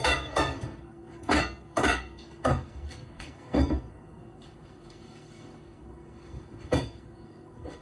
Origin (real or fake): fake